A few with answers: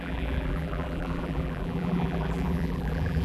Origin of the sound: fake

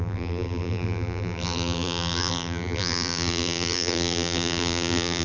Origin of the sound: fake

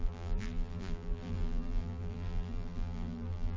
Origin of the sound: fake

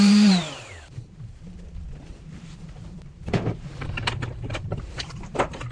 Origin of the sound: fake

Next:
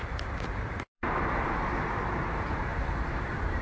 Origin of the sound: fake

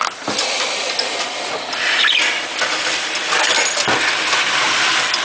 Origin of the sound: fake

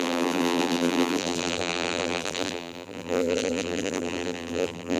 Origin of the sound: fake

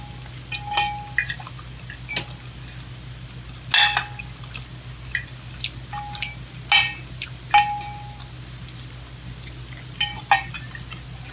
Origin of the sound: real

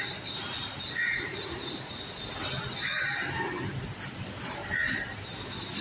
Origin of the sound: real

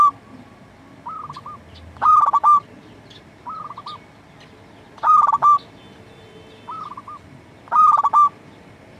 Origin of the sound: real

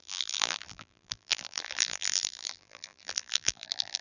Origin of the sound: fake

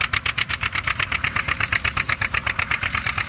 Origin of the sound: fake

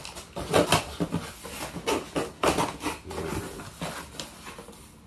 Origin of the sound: real